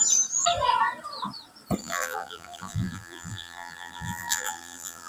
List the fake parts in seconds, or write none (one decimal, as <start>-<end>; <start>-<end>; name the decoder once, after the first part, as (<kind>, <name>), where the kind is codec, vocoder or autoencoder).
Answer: 1.8-5.1 (vocoder, BigVGAN v2)